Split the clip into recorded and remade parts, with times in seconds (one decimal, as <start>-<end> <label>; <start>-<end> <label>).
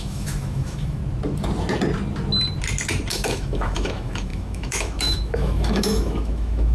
0.0-1.0 remade; 1.0-3.1 recorded; 3.1-6.7 remade